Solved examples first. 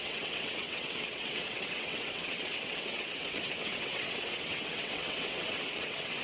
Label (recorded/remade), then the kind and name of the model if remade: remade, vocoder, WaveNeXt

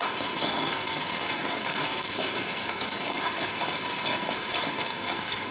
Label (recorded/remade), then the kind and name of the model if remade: remade, codec, SNAC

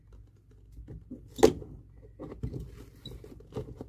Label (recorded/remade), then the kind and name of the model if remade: recorded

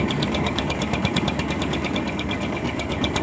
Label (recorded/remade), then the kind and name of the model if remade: remade, codec, DAC